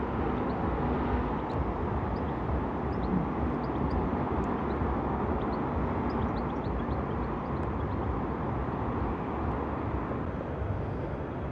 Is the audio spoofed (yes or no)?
no